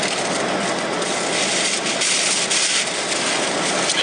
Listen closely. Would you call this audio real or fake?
real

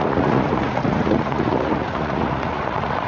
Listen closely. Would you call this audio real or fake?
fake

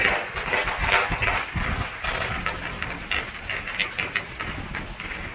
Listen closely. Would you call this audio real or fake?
real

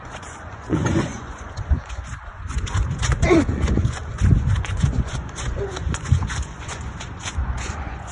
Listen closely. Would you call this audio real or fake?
fake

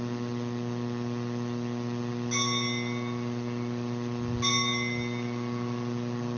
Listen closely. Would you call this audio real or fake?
real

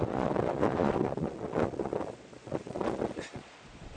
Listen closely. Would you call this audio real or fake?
fake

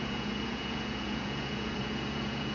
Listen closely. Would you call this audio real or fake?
fake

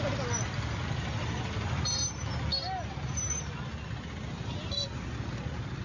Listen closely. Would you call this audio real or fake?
real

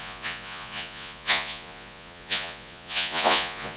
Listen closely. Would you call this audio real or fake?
fake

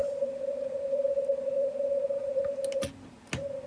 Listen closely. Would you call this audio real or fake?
real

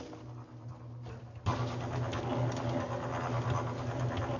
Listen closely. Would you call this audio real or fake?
real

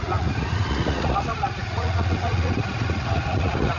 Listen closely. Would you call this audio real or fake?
fake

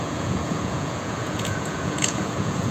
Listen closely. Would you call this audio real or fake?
fake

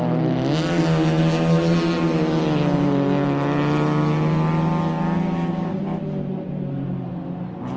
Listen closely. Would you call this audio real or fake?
real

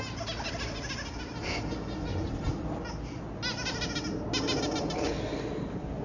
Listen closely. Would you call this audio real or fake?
real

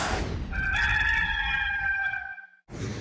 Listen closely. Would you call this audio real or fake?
real